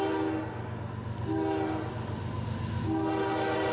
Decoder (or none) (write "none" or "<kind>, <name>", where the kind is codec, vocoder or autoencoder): none